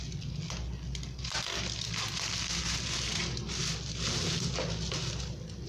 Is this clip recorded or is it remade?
recorded